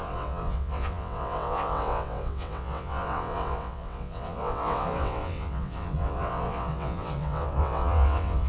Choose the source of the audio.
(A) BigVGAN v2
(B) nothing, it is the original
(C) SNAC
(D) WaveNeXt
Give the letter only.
D